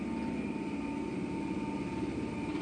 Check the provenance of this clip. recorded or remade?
recorded